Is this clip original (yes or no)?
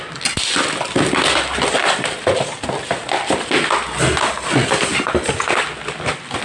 yes